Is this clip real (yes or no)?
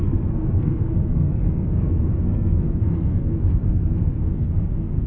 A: no